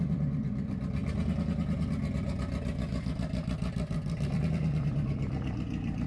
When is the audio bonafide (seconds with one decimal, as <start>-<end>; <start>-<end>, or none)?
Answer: 1.0-3.1